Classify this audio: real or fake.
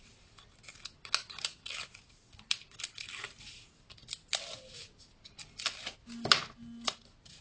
real